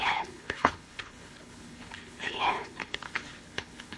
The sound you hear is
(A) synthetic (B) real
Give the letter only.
A